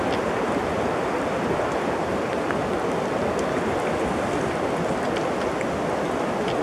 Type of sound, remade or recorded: recorded